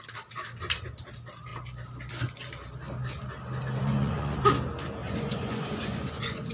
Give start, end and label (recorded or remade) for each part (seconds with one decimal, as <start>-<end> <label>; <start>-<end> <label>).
0.0-3.8 recorded; 3.8-4.4 remade; 4.4-5.0 recorded; 5.0-6.5 remade